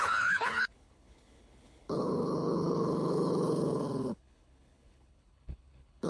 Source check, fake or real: fake